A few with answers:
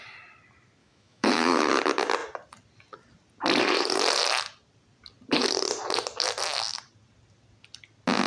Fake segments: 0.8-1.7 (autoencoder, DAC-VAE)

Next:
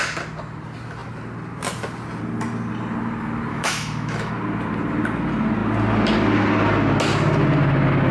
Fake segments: 3.5-4.3 (autoencoder, DAC-VAE)

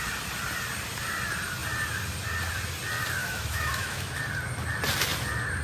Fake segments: 3.2-4.2 (autoencoder, DAC-VAE)

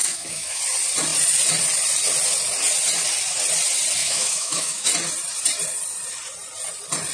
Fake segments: 0.0-0.6 (autoencoder, DAC-VAE); 4.0-4.9

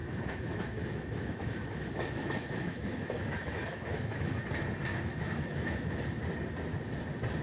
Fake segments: 0.0-4.4 (autoencoder, DAC-VAE); 4.9-6.0